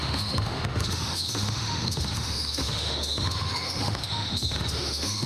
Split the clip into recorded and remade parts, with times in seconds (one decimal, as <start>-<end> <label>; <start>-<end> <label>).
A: 0.0-5.3 remade